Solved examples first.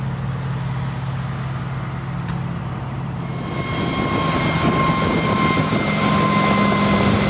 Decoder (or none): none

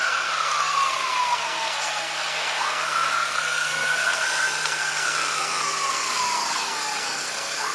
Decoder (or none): codec, SNAC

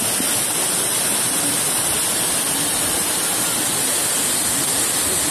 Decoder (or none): none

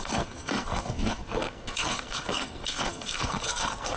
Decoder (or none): codec, SNAC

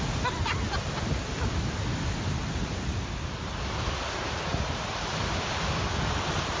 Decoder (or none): none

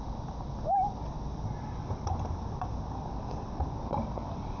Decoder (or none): none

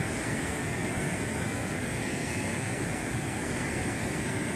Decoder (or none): codec, SNAC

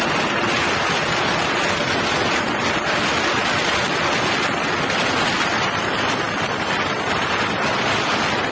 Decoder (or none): none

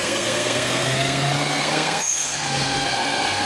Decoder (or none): codec, SNAC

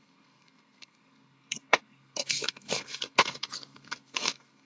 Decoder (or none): codec, SNAC